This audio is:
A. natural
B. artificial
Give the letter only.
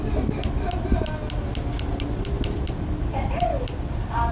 A